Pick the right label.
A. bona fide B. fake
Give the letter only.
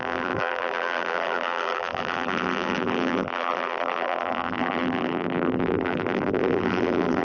B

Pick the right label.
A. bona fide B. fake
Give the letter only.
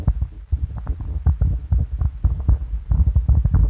A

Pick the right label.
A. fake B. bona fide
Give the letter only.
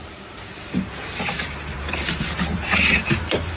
A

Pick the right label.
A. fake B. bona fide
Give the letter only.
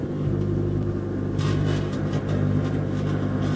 B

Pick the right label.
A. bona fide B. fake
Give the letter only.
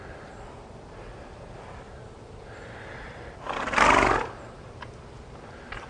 B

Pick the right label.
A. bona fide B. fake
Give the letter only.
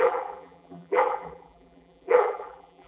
B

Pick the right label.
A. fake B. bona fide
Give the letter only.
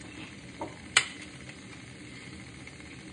A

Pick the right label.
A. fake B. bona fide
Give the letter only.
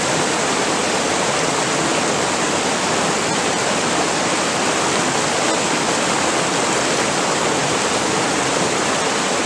B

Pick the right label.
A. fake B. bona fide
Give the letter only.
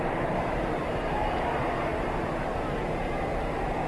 A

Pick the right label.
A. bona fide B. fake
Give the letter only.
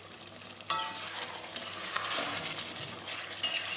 A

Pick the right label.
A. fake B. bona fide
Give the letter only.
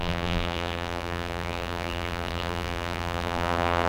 A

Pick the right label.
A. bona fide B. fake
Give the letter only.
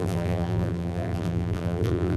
B